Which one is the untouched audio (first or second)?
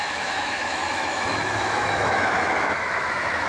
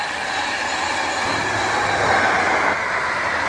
second